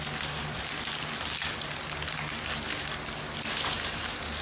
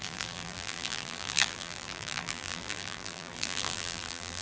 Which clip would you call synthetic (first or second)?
second